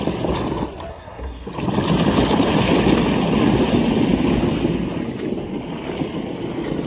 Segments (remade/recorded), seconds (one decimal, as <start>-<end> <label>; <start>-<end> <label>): 0.0-0.9 recorded; 0.9-1.5 remade; 1.5-6.9 recorded